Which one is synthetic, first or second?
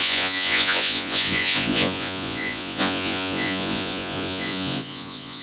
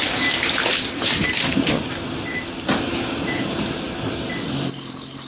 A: first